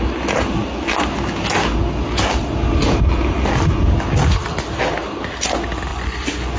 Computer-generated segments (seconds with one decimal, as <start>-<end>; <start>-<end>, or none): 5.9-6.6